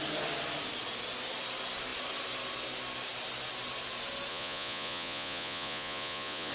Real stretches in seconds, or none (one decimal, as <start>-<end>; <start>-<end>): 0.0-4.3